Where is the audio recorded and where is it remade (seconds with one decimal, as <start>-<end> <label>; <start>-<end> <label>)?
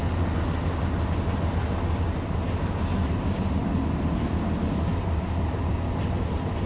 0.0-6.7 recorded